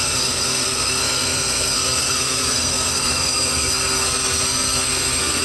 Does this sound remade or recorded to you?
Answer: remade